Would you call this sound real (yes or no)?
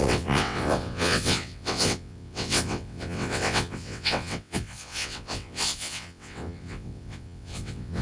no